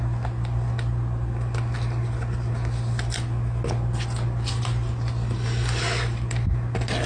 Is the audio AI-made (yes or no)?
no